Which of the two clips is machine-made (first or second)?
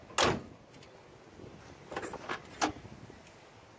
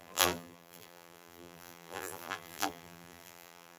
second